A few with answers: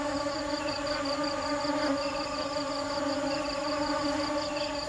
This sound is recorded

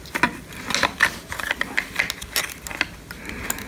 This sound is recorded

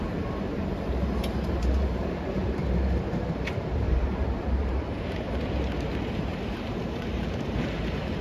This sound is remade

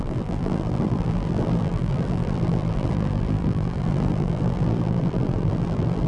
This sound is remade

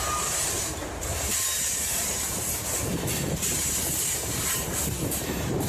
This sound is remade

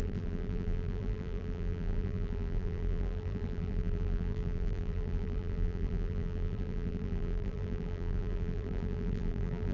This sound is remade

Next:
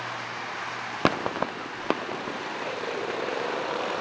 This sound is remade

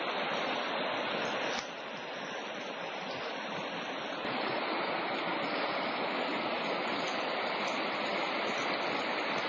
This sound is recorded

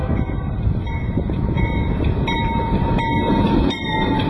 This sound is remade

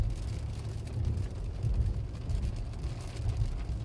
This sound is recorded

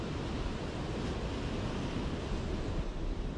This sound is recorded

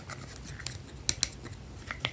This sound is recorded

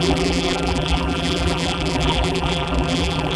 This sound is remade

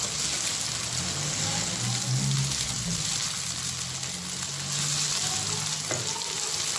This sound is recorded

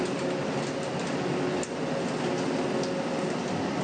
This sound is recorded